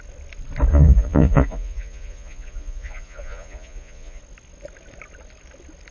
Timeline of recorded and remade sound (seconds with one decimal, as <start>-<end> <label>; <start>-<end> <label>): 0.0-0.7 recorded; 0.7-4.2 remade; 4.2-5.9 recorded